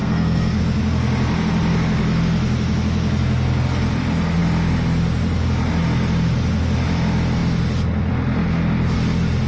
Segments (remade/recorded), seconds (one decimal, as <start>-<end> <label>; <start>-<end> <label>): 0.0-0.6 remade; 0.6-9.5 recorded